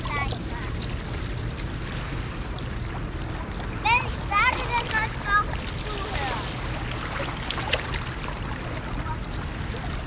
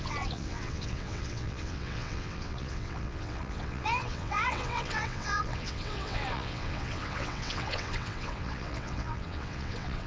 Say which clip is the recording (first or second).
first